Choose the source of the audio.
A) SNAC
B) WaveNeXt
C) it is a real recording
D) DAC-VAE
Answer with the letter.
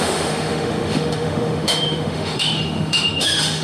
D